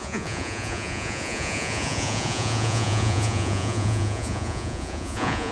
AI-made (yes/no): yes